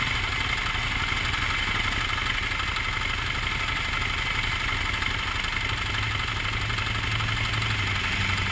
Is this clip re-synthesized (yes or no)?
no